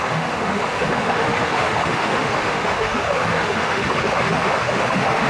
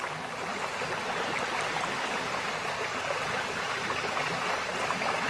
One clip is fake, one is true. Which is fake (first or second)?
first